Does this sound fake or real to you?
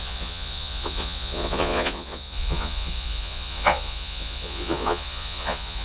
fake